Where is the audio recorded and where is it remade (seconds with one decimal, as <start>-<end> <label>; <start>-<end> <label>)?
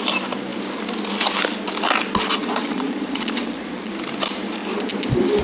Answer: 0.0-2.4 recorded; 2.4-3.9 remade; 3.9-5.4 recorded